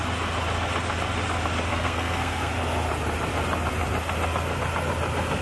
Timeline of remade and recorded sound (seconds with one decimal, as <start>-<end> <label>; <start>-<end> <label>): 0.0-1.7 recorded; 1.7-2.5 remade; 2.5-5.4 recorded